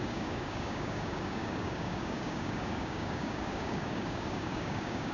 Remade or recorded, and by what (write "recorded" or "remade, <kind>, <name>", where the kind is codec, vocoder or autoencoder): remade, codec, DAC